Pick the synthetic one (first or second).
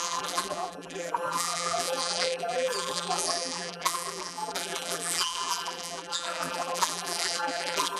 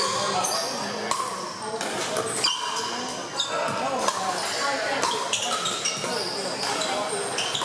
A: first